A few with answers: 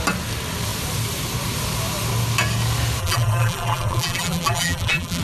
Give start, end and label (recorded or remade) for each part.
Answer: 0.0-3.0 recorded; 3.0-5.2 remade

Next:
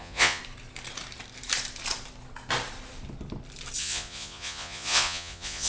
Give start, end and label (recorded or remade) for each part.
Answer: 0.0-0.4 remade; 0.4-3.8 recorded; 3.8-5.7 remade

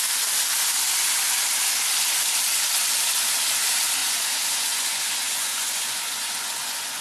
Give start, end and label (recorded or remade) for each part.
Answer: 0.0-4.0 recorded; 4.0-7.0 remade

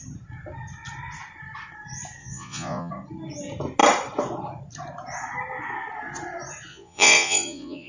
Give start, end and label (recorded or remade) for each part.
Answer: 0.0-2.2 recorded; 2.2-2.9 remade; 2.9-6.7 recorded; 6.7-7.9 remade

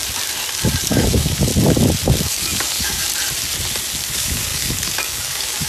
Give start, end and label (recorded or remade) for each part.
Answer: 0.0-0.8 recorded; 0.8-1.5 remade; 1.5-2.2 recorded; 2.2-3.1 remade; 3.1-4.0 recorded; 4.0-5.7 remade